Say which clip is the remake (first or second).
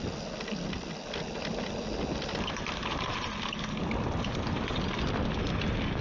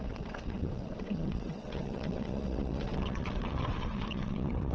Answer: second